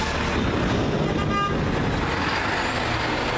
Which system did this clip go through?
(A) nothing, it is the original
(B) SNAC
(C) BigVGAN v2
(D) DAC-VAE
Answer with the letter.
A